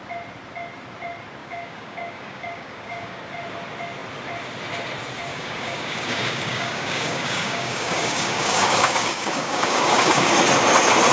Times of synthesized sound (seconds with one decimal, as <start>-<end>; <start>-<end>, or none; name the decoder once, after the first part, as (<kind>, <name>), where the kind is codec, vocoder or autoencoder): 1.4-3.2 (codec, DAC); 5.3-10.3